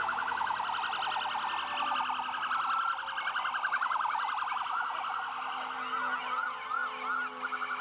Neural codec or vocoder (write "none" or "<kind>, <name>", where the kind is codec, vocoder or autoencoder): none